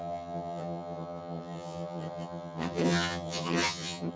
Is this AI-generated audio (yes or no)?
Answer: yes